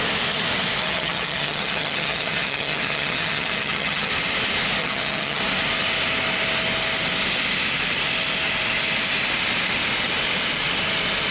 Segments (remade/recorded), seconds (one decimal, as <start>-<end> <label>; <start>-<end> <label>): 0.0-0.8 recorded; 0.8-4.1 remade; 4.1-4.8 recorded; 4.8-5.4 remade; 5.4-11.3 recorded